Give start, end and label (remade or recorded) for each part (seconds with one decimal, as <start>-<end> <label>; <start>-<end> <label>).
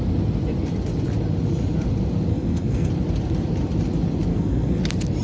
0.0-2.3 recorded; 2.3-2.9 remade; 2.9-4.3 recorded; 4.3-4.8 remade; 4.8-5.2 recorded